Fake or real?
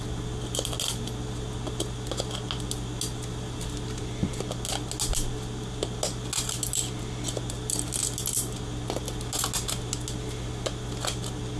real